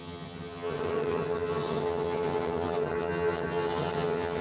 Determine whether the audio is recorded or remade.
remade